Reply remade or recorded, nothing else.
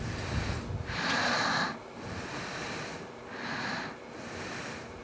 recorded